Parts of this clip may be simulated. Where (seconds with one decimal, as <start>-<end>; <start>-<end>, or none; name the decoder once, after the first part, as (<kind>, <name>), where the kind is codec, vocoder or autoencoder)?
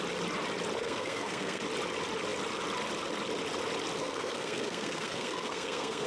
0.8-1.6 (codec, SNAC); 4.0-6.1